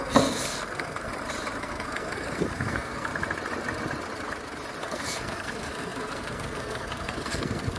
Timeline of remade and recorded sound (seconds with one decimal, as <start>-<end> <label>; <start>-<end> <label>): 0.0-1.1 remade; 1.1-1.6 recorded; 1.6-3.1 remade; 3.1-4.8 recorded; 4.8-7.8 remade